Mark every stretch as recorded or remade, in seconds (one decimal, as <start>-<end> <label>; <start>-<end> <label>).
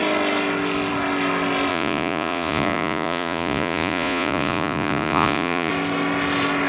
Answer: 0.0-1.7 recorded; 1.7-5.7 remade; 5.7-6.7 recorded